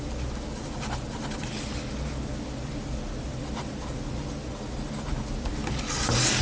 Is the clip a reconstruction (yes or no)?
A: no